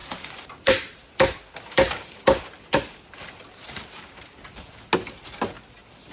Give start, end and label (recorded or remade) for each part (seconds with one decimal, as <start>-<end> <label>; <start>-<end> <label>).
0.0-3.7 remade; 3.7-6.1 recorded